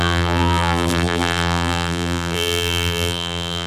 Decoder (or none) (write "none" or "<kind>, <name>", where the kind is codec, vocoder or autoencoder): vocoder, BigVGAN v2